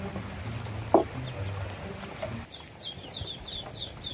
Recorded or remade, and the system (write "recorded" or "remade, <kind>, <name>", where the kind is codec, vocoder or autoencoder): recorded